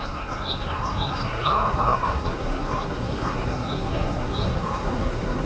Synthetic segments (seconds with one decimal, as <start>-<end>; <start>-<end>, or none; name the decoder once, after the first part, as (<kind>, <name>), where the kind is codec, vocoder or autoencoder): 0.0-5.5 (codec, SNAC)